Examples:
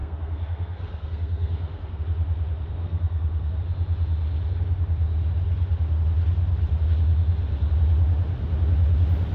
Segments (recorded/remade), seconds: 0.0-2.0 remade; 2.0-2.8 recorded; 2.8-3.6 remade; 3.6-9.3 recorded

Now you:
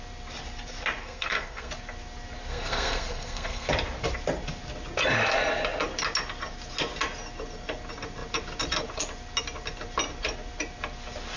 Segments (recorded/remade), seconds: 0.0-1.0 recorded; 1.0-1.7 remade; 1.7-2.5 recorded; 2.5-3.7 remade; 3.7-11.4 recorded

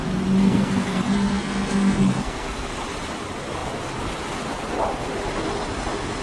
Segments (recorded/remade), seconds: 0.0-0.4 recorded; 0.4-2.7 remade; 2.7-6.2 recorded

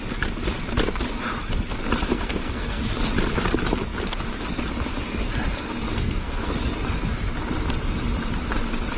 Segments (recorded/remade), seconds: 0.0-2.1 recorded; 2.1-2.8 remade; 2.8-5.9 recorded; 5.9-6.5 remade; 6.5-9.0 recorded